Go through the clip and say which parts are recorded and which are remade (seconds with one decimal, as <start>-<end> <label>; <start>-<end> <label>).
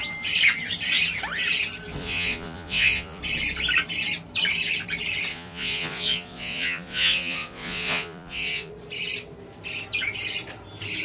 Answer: 0.0-2.0 recorded; 2.0-3.2 remade; 3.2-5.3 recorded; 5.3-8.7 remade; 8.7-11.0 recorded